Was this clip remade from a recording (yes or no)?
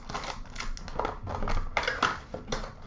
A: no